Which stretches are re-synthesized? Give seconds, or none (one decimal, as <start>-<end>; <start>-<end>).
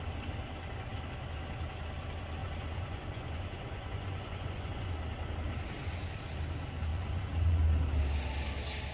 2.4-4.9; 6.9-7.6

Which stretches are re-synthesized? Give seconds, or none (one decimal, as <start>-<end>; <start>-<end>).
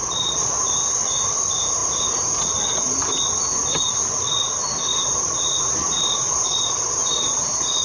0.0-0.7; 4.9-7.8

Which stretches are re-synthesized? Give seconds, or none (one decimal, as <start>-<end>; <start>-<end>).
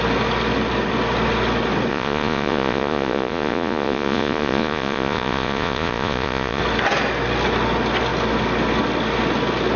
1.9-6.6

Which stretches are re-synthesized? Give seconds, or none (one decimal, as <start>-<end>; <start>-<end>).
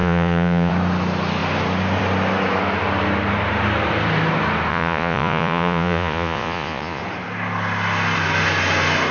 0.0-0.7; 4.7-7.0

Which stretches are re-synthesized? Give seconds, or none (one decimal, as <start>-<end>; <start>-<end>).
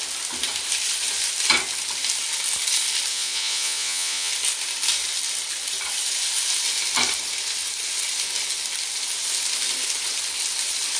3.1-4.3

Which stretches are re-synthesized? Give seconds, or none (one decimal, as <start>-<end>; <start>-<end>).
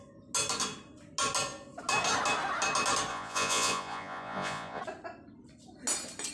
3.1-4.8